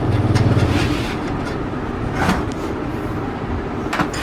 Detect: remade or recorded recorded